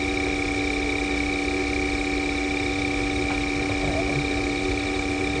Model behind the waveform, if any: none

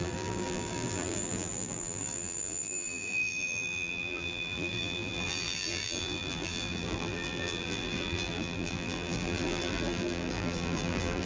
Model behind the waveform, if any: vocoder, BigVGAN v2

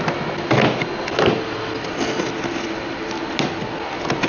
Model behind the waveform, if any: none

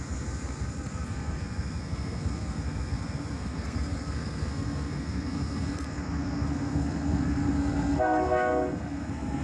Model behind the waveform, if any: codec, SNAC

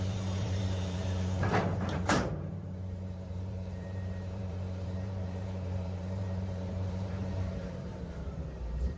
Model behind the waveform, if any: vocoder, BigVGAN v2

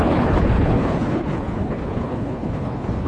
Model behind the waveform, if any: codec, HILCodec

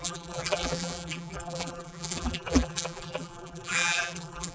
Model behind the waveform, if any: vocoder, BigVGAN v2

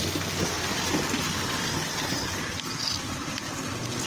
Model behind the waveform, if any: none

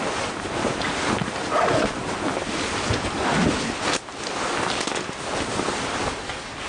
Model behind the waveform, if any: none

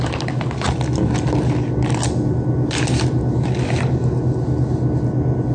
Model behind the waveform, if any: none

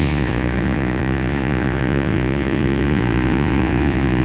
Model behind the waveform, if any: vocoder, Vocos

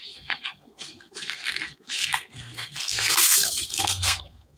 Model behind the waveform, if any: codec, SNAC